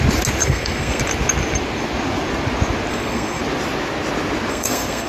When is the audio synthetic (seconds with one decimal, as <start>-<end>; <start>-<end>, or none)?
0.4-1.0; 2.9-3.4; 4.5-5.1